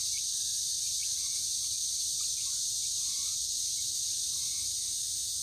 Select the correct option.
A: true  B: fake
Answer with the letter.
B